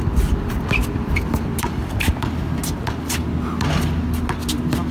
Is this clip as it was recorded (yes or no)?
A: yes